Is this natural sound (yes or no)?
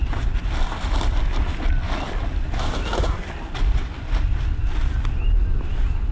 yes